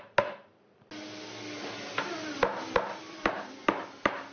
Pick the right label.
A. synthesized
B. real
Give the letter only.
B